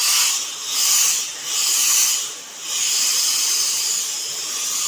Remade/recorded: recorded